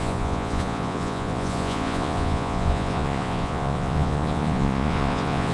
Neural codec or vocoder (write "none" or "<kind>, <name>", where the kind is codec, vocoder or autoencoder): vocoder, Vocos